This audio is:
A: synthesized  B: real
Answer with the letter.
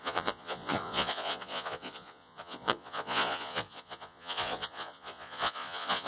A